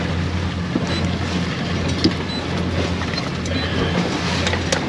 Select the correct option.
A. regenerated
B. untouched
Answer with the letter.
B